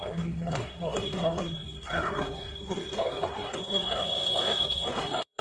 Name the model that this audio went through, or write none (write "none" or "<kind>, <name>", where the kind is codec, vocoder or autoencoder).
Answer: codec, SNAC